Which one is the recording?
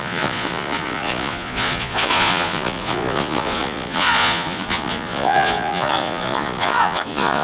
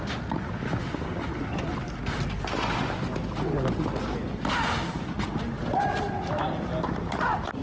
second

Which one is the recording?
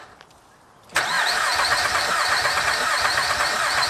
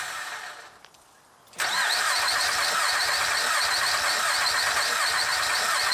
second